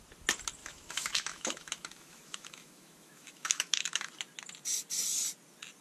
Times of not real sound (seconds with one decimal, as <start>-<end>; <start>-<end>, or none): 0.6-4.1